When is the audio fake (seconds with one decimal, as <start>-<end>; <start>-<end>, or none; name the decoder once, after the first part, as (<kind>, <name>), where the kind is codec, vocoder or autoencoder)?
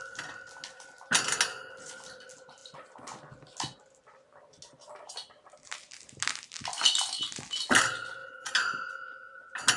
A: none